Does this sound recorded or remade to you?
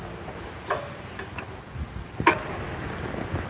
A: recorded